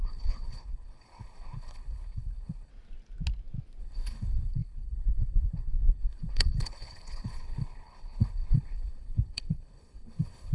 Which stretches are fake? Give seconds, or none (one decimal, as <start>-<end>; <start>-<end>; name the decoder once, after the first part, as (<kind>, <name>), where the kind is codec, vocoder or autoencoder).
0.0-2.7 (codec, HILCodec); 3.8-10.5